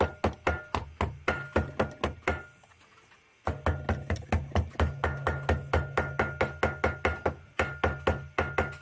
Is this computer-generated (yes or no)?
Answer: no